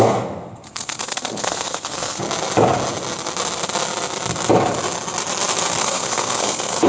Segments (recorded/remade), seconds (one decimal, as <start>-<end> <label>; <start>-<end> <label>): 0.0-2.2 remade; 2.2-5.8 recorded; 5.8-6.9 remade